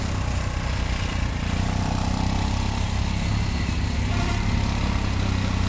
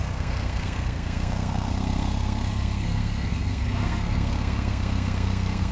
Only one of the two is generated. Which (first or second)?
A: second